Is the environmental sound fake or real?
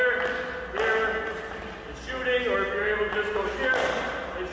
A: real